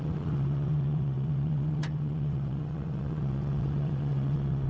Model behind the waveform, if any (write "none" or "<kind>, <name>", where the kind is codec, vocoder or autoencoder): vocoder, WaveNeXt